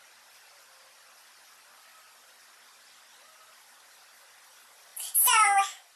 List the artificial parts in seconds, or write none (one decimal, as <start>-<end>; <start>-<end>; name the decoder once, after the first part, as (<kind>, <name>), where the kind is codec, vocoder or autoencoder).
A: none